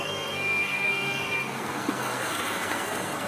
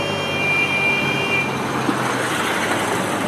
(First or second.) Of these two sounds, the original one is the second